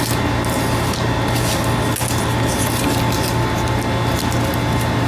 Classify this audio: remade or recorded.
recorded